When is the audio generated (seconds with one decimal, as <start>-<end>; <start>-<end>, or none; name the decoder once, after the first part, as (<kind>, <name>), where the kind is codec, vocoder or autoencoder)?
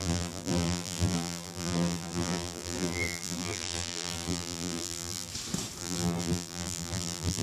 0.0-5.3 (vocoder, BigVGAN v2); 5.8-7.4